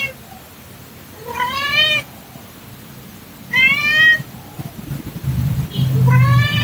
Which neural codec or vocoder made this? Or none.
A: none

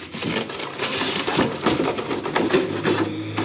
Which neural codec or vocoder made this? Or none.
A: none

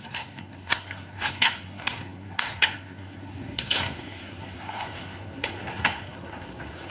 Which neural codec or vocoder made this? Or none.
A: codec, SNAC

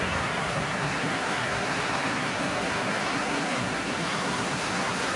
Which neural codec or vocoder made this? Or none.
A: codec, SNAC